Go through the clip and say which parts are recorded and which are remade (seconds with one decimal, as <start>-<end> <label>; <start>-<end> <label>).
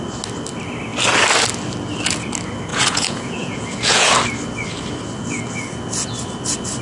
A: 0.0-2.7 recorded; 2.7-4.1 remade; 4.1-6.8 recorded